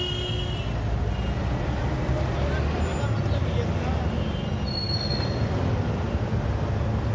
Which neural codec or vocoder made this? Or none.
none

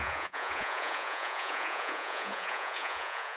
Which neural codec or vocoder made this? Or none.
vocoder, Vocos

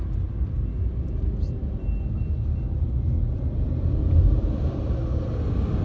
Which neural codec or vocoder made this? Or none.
none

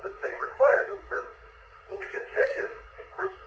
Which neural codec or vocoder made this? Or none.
codec, SNAC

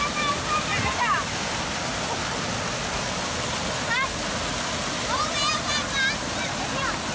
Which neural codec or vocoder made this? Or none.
none